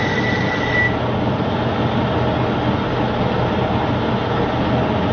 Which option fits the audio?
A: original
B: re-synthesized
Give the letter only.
A